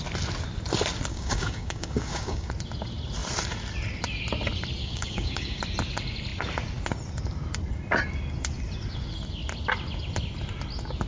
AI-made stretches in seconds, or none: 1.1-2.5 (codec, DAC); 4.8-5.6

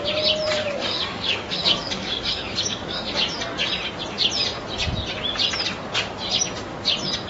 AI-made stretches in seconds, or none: 0.6-3.4 (codec, DAC)

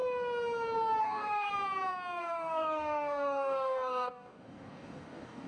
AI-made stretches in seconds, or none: 1.0-1.5 (codec, DAC); 2.2-5.5